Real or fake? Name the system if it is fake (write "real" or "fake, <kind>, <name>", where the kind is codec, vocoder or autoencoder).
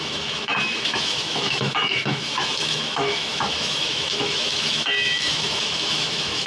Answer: fake, autoencoder, DAC-VAE